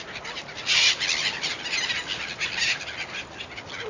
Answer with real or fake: real